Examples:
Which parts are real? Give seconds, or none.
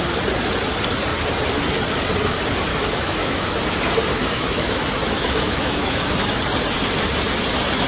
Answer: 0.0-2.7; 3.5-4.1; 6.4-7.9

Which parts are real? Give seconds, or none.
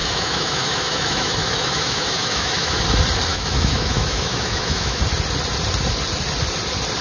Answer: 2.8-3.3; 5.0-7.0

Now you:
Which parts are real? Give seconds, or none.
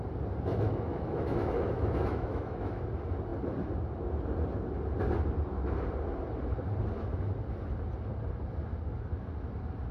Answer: 0.0-0.5; 2.8-9.9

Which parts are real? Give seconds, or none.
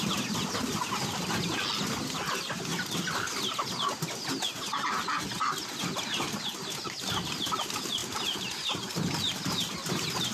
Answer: 0.0-10.3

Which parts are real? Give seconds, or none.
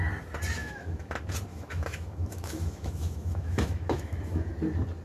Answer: 0.0-0.6; 1.1-1.5; 4.5-5.0